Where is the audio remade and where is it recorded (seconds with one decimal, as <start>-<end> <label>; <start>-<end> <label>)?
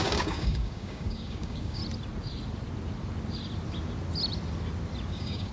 0.0-1.8 remade; 1.8-5.1 recorded; 5.1-5.5 remade